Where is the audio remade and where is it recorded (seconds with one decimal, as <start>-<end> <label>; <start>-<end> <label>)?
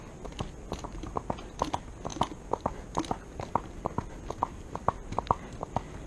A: 0.0-6.1 recorded